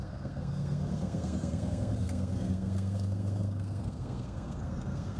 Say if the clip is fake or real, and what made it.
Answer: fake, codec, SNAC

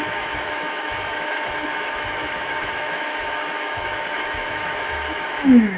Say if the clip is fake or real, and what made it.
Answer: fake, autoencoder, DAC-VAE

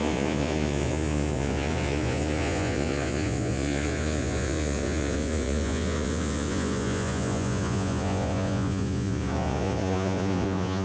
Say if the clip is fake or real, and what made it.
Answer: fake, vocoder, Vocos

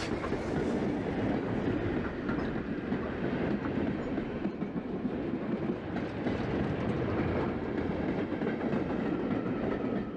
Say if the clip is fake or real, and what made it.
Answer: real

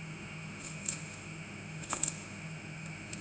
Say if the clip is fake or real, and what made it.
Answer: fake, autoencoder, DAC-VAE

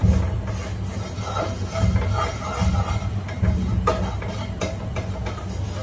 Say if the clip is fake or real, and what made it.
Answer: real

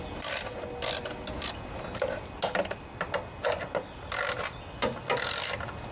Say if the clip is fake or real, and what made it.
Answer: real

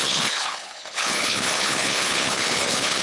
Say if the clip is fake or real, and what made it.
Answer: fake, codec, HILCodec